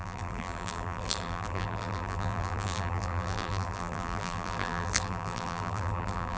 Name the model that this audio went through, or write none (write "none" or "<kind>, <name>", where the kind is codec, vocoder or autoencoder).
vocoder, BigVGAN v2